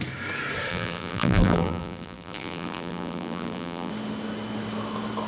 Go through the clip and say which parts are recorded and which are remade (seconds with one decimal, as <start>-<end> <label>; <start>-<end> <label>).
0.0-0.7 recorded; 0.7-3.9 remade; 3.9-5.3 recorded